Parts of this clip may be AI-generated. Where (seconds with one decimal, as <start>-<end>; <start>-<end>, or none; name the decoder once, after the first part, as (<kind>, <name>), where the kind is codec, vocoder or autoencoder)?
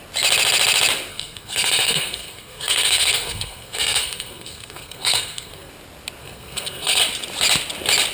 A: 1.1-5.7 (codec, SNAC); 6.2-7.0